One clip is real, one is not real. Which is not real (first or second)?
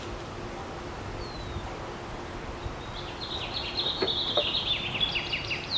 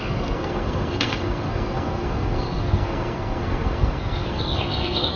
second